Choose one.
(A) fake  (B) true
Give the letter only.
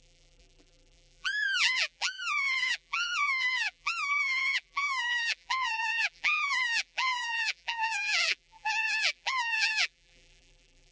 A